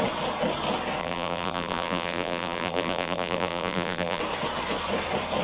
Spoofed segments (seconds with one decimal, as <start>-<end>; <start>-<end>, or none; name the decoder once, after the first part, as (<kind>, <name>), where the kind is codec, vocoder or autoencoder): 1.0-4.2 (vocoder, BigVGAN v2)